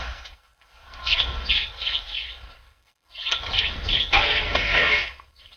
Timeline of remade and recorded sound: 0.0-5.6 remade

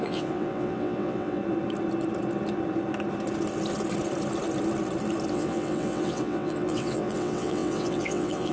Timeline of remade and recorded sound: 0.0-1.4 remade; 1.4-5.3 recorded; 5.3-8.5 remade

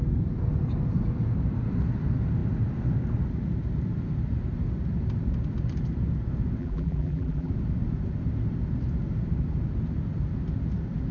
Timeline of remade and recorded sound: 0.0-6.6 recorded; 6.6-7.5 remade; 7.5-11.1 recorded

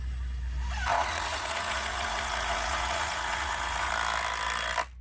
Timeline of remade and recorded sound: 0.0-0.9 recorded; 0.9-3.9 remade; 3.9-5.0 recorded